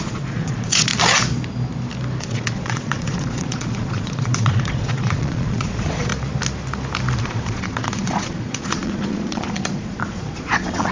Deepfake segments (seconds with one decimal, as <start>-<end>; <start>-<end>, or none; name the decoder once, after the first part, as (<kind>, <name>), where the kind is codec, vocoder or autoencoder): 0.0-0.9 (vocoder, Vocos); 2.2-6.1; 7.2-10.9